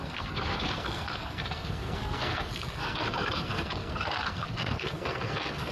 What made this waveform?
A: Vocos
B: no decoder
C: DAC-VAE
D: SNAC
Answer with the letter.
D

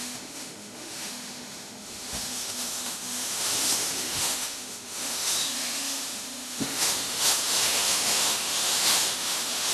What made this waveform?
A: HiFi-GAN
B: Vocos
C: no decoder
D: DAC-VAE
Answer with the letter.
D